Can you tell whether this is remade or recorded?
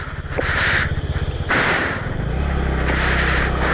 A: recorded